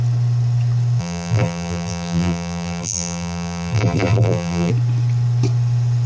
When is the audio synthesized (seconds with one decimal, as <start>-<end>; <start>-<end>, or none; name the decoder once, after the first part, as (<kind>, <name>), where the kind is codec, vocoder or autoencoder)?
1.0-4.7 (vocoder, BigVGAN v2)

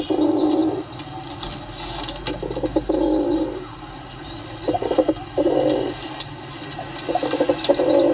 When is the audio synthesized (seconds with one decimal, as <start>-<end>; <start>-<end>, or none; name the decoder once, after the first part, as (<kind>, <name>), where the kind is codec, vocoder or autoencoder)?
none

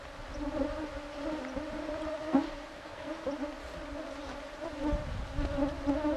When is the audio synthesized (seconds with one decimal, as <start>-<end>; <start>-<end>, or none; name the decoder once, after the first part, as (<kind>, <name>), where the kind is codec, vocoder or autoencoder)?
2.2-3.1 (codec, SNAC)

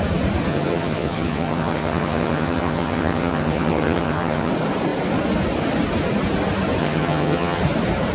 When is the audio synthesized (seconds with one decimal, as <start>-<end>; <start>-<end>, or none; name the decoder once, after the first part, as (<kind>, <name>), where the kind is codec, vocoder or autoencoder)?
0.5-4.5 (vocoder, HiFi-GAN); 6.8-7.6

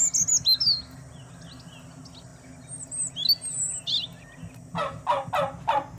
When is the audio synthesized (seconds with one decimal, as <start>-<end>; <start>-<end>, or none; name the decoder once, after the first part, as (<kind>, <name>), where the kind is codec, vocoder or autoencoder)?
none

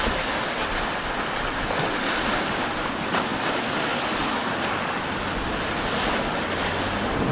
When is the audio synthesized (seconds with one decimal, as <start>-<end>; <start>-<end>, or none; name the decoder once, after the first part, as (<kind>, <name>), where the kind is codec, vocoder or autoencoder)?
none